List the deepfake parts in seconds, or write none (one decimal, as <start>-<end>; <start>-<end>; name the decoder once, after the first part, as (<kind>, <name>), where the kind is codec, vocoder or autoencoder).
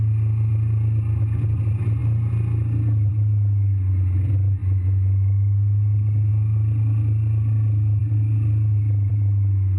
none